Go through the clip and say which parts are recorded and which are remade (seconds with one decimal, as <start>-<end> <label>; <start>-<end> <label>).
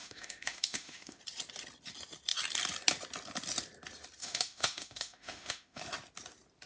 0.0-1.2 remade; 1.2-4.2 recorded; 4.2-5.8 remade; 5.8-6.7 recorded